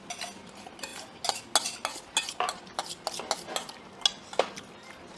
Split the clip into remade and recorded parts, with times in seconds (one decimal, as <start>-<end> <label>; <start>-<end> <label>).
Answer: 0.0-5.2 recorded